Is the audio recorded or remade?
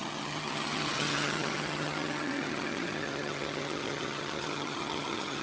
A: remade